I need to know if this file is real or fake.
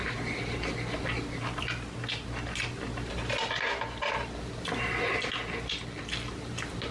real